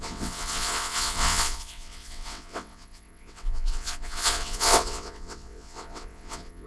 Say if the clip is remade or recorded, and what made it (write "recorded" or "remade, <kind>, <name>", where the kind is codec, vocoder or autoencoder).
remade, vocoder, WaveNeXt